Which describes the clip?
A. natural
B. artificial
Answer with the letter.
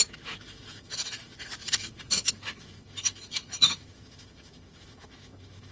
B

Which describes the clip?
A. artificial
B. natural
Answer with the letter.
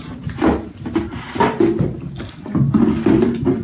B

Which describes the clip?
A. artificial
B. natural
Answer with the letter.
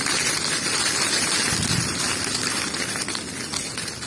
B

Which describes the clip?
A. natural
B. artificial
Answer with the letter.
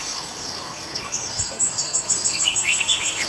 B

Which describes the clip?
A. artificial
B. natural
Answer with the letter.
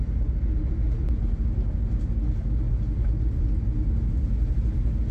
B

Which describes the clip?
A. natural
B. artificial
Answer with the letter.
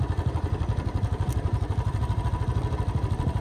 B